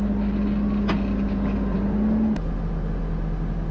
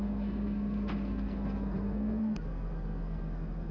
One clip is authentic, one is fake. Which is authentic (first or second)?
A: first